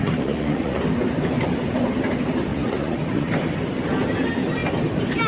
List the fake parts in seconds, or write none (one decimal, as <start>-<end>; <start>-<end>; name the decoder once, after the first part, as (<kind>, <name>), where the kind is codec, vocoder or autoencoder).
0.0-0.8 (vocoder, Vocos); 2.5-3.3